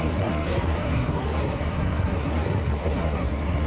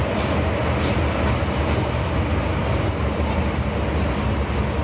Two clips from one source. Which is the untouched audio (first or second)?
second